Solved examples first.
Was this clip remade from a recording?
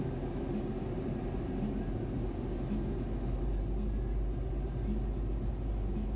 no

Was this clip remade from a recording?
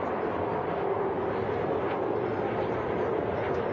no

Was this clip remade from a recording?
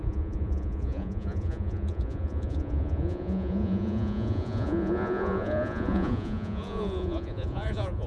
yes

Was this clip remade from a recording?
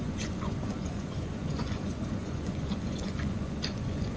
yes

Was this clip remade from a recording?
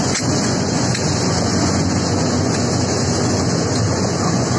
yes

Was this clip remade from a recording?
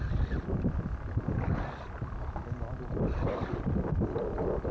no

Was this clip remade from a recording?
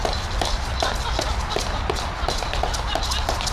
no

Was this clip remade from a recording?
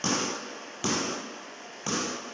yes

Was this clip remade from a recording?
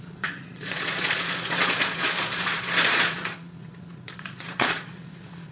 yes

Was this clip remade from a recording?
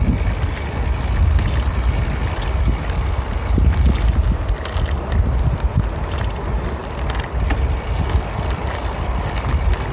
no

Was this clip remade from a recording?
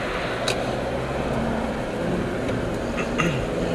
no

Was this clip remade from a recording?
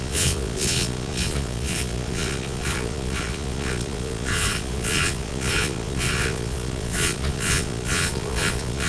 yes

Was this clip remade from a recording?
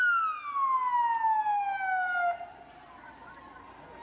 no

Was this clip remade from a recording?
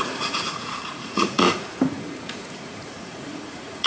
yes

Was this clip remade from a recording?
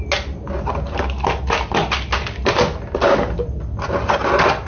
no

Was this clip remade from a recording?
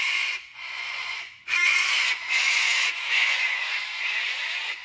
yes